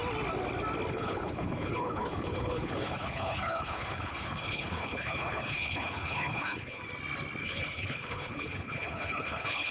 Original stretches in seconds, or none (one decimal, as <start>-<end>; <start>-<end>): 0.0-0.9; 6.8-7.4